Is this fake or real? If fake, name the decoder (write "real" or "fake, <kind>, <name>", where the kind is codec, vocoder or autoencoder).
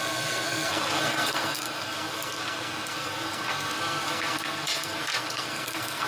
fake, codec, SNAC